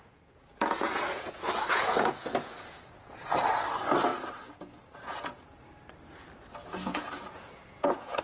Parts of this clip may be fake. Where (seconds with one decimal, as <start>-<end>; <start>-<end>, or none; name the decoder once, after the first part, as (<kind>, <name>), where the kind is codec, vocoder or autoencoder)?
0.0-3.5 (vocoder, Vocos); 4.1-5.6; 6.6-8.2